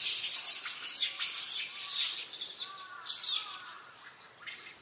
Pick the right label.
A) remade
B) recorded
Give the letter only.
B